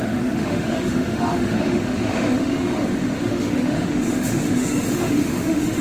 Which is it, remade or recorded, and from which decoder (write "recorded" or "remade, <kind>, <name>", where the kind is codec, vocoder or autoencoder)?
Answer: remade, autoencoder, DAC-VAE